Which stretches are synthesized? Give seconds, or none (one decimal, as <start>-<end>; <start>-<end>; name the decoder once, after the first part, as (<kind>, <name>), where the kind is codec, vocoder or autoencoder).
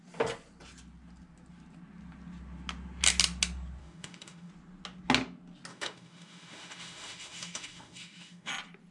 3.8-4.5 (autoencoder, DAC-VAE); 5.7-8.5